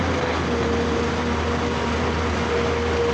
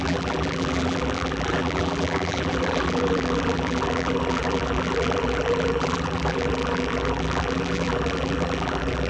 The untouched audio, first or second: first